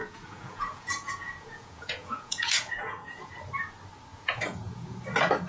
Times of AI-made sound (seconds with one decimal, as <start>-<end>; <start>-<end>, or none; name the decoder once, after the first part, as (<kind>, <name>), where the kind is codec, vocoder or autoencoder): 0.0-3.3 (vocoder, Vocos); 4.1-5.0